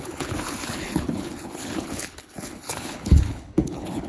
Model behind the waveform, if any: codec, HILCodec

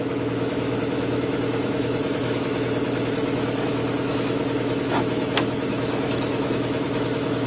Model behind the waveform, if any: autoencoder, DAC-VAE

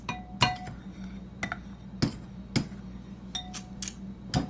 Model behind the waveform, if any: none